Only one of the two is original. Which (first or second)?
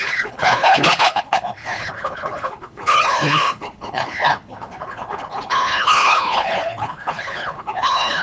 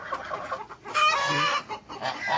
second